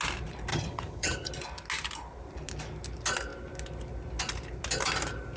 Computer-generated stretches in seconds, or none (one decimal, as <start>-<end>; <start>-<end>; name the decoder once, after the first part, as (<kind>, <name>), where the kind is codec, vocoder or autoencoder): 0.5-1.3 (vocoder, HiFi-GAN)